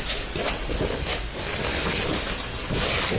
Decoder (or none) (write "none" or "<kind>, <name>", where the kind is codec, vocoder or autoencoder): none